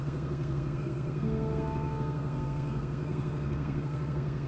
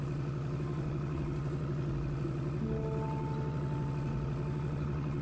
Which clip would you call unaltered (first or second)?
second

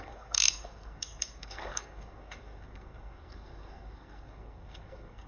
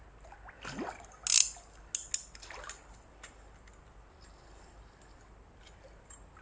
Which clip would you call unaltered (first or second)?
second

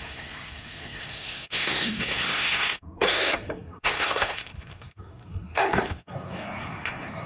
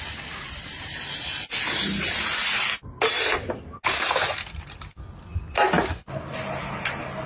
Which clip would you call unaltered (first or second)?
second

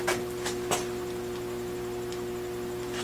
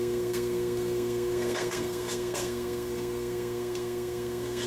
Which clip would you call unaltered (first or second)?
first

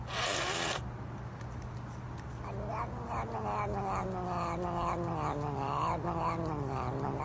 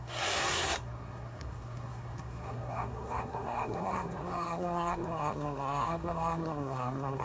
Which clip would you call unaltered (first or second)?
first